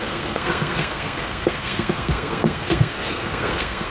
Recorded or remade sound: remade